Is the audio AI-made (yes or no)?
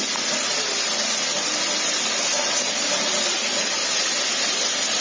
no